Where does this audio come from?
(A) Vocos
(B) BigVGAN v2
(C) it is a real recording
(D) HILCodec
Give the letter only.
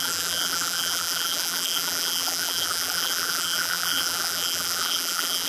B